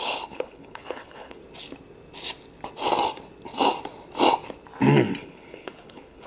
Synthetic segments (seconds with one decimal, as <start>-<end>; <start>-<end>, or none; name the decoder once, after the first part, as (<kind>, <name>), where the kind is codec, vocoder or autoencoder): 0.0-1.4 (codec, HILCodec); 5.2-6.3